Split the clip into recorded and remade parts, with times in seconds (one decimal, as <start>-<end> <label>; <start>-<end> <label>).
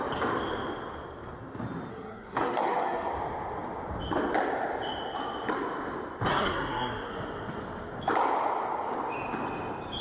0.0-1.9 recorded; 1.9-3.1 remade; 3.1-6.3 recorded; 6.3-7.1 remade; 7.1-10.0 recorded